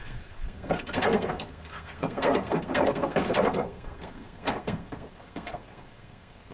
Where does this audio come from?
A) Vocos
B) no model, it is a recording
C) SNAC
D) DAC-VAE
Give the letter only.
C